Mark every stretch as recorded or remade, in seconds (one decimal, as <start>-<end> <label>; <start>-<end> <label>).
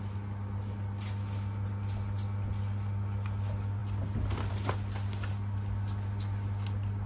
0.0-7.1 recorded